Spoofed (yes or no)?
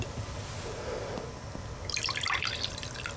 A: no